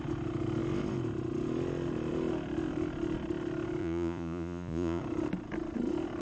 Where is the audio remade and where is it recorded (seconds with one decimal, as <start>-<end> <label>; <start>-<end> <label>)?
0.0-3.8 recorded; 3.8-5.0 remade; 5.0-6.2 recorded